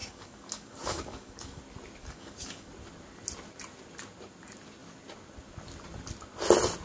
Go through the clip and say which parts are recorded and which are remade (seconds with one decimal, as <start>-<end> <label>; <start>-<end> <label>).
0.0-1.6 remade; 1.6-2.0 recorded; 2.0-2.7 remade; 2.7-6.8 recorded